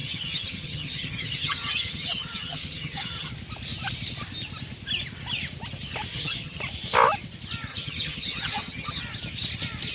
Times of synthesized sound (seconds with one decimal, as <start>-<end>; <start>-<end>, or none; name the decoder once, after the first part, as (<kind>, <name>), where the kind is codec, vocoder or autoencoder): 0.0-3.3 (vocoder, HiFi-GAN); 6.1-6.6; 7.7-9.0